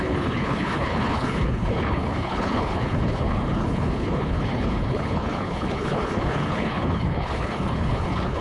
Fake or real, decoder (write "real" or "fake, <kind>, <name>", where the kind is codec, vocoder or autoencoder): fake, codec, HILCodec